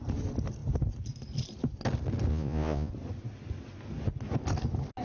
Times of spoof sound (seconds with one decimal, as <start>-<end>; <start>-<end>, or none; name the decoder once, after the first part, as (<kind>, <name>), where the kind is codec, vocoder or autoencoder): 2.3-2.9 (vocoder, Vocos)